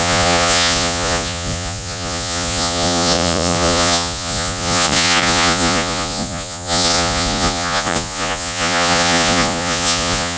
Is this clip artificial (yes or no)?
yes